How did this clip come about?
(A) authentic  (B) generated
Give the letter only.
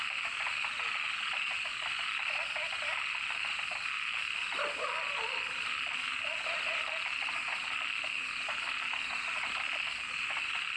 A